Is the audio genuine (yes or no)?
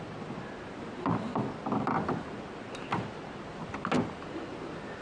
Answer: yes